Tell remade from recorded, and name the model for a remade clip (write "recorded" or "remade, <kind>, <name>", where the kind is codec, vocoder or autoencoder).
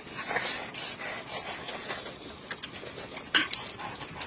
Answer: recorded